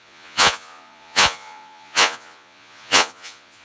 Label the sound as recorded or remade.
remade